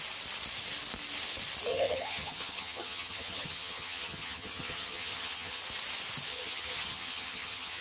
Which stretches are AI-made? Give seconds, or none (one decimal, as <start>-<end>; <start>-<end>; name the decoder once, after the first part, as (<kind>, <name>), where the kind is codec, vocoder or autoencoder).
1.7-5.6 (vocoder, HiFi-GAN); 6.3-7.8